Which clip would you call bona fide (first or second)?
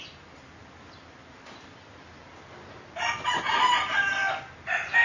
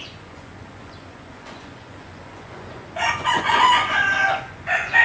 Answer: first